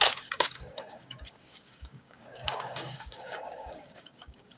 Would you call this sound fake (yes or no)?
yes